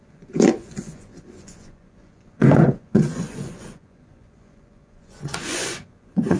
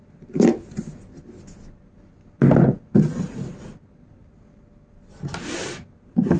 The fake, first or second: first